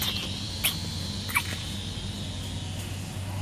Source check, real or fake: real